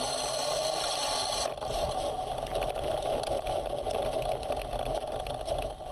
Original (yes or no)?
yes